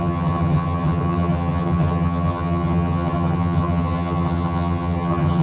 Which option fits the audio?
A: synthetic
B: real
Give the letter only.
A